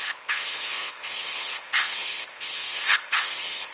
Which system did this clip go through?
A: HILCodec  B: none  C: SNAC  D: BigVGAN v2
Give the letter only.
A